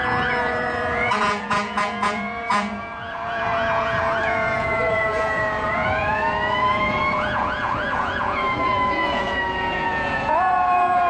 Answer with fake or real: fake